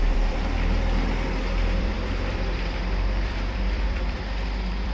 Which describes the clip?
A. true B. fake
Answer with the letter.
B